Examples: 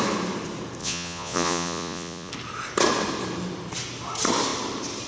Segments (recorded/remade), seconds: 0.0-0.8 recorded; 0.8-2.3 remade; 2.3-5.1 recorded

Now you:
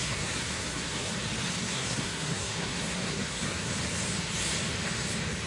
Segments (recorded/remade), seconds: 0.0-1.1 remade; 1.1-1.6 recorded; 1.6-3.7 remade; 3.7-5.5 recorded

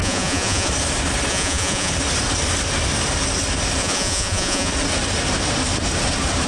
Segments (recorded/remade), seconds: 0.0-0.7 remade; 0.7-1.3 recorded; 1.3-1.9 remade; 1.9-3.8 recorded; 3.8-4.7 remade; 4.7-6.5 recorded

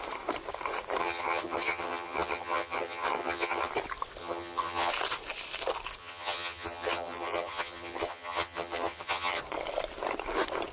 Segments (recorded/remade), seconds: 0.0-1.0 recorded; 1.0-3.7 remade; 3.7-4.2 recorded; 4.2-4.9 remade; 4.9-6.0 recorded; 6.0-9.4 remade; 9.4-10.7 recorded

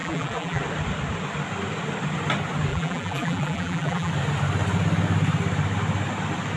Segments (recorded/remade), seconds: 0.0-0.6 remade; 0.6-2.7 recorded; 2.7-4.1 remade; 4.1-6.6 recorded

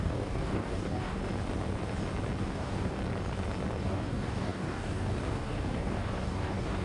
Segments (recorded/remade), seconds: 0.0-1.2 remade; 1.2-2.4 recorded; 2.4-3.0 remade; 3.0-3.8 recorded; 3.8-6.8 remade

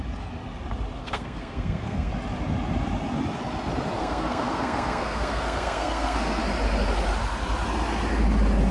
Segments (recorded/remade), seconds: 0.0-1.0 recorded; 1.0-2.1 remade; 2.1-4.0 recorded; 4.0-6.4 remade; 6.4-8.7 recorded

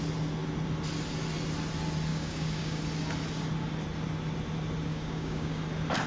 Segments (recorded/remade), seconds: 0.0-2.1 recorded; 2.1-2.8 remade; 2.8-4.9 recorded; 4.9-5.6 remade; 5.6-6.1 recorded